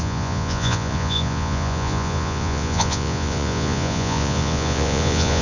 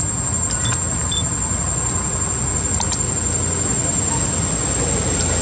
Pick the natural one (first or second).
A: second